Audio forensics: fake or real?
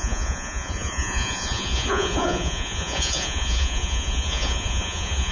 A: fake